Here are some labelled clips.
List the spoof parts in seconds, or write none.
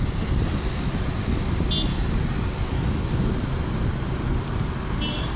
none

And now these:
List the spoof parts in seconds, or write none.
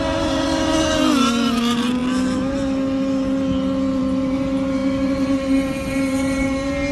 none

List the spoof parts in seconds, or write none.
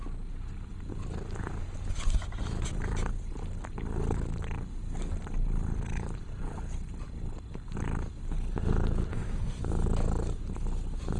9.1-9.6 (codec, SNAC)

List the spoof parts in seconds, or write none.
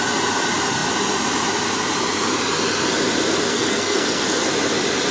3.5-4.5 (codec, SNAC)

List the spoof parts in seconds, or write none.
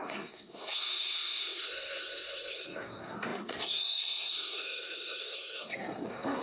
0.0-6.4 (codec, SNAC)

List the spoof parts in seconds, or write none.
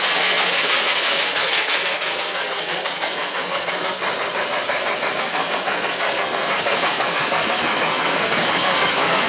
0.0-4.0 (codec, SNAC); 5.2-9.3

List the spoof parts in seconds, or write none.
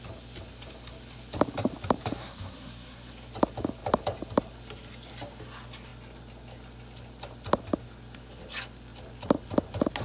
2.2-3.1 (codec, SNAC)